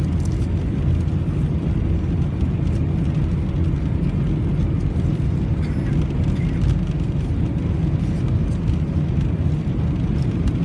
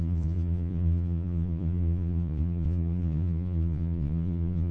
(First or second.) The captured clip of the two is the first